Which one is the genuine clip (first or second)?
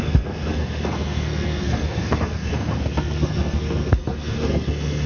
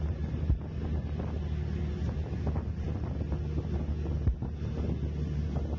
second